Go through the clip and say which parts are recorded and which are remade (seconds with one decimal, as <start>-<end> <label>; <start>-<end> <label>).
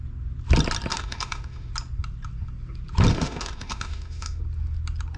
0.0-0.9 recorded; 0.9-1.7 remade; 1.7-3.1 recorded; 3.1-4.4 remade; 4.4-5.2 recorded